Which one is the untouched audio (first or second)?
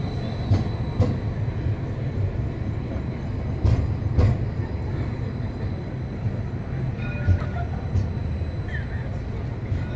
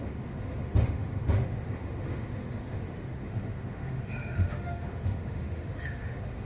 first